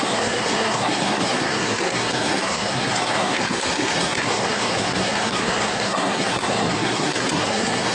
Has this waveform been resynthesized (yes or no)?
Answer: yes